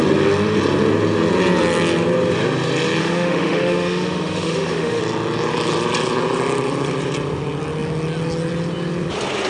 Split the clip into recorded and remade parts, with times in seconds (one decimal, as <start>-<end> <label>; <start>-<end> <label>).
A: 0.0-3.0 recorded; 3.0-5.0 remade; 5.0-9.5 recorded